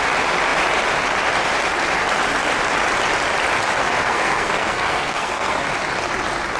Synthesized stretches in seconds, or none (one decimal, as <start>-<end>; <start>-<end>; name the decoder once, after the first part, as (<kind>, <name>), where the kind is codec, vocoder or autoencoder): 3.8-5.7 (codec, SNAC)